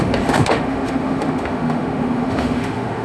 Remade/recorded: remade